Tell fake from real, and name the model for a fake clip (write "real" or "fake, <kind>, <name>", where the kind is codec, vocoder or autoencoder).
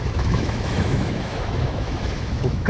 fake, autoencoder, DAC-VAE